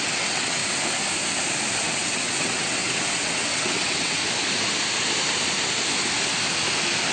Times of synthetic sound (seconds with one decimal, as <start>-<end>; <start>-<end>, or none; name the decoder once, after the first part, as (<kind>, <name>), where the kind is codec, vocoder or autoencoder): 0.0-0.6 (vocoder, WaveNeXt); 1.7-4.2